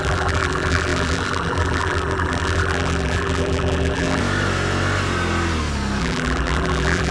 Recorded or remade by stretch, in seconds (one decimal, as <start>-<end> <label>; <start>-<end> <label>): 0.0-4.2 remade; 4.2-6.0 recorded; 6.0-7.1 remade